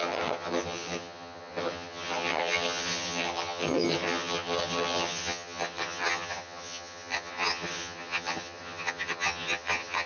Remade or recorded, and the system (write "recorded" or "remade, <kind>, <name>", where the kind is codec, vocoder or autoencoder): remade, vocoder, HiFi-GAN